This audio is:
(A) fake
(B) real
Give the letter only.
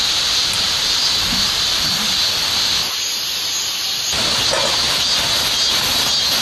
B